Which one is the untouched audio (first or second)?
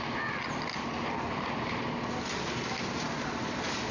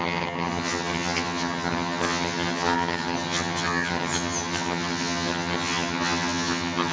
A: first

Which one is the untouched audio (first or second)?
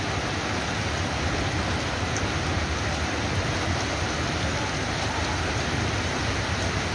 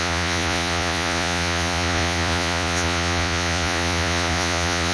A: first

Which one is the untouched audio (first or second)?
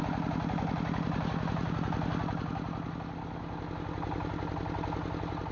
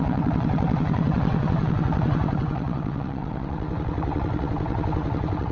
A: first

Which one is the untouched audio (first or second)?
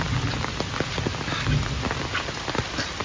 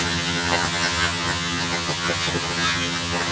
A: first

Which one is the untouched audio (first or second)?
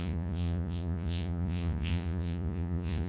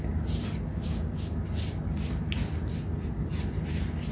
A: second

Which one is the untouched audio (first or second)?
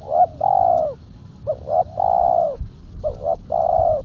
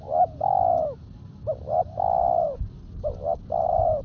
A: second